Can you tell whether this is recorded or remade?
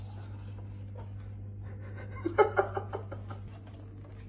recorded